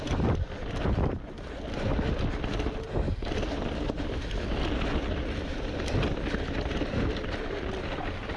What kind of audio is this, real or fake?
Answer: real